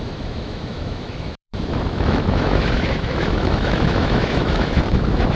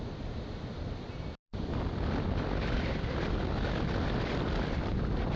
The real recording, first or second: second